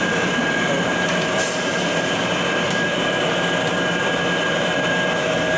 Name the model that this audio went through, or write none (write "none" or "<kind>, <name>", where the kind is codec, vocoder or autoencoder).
vocoder, BigVGAN v2